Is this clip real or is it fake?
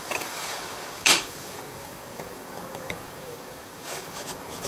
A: fake